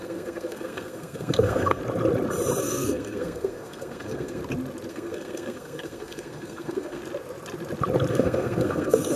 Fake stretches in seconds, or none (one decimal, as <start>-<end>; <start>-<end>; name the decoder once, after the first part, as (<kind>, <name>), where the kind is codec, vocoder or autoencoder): 0.0-1.8 (codec, SNAC); 2.6-4.4; 4.9-7.0; 8.1-9.2